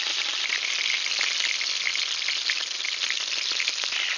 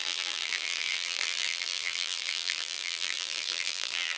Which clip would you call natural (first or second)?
first